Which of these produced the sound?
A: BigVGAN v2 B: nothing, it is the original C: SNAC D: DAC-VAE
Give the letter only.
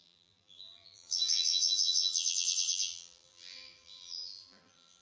A